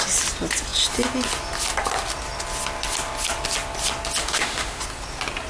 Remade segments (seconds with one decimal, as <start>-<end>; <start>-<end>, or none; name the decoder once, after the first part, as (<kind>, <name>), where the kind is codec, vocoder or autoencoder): 4.2-4.8 (autoencoder, DAC-VAE)